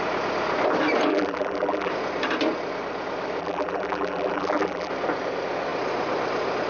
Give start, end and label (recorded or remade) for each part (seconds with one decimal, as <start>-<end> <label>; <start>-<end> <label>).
0.0-1.1 recorded; 1.1-1.9 remade; 1.9-3.4 recorded; 3.4-4.9 remade; 4.9-6.7 recorded

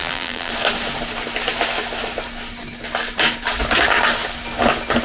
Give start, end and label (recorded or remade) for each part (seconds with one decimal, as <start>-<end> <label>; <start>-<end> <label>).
0.0-0.5 remade; 0.5-5.0 recorded